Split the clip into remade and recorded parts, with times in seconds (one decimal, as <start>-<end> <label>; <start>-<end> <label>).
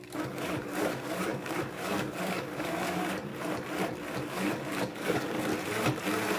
0.0-3.3 remade; 3.3-4.2 recorded; 4.2-5.5 remade; 5.5-6.4 recorded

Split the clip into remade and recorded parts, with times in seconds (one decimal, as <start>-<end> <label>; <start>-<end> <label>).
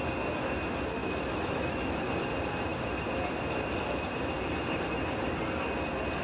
0.0-1.0 recorded; 1.0-2.1 remade; 2.1-6.2 recorded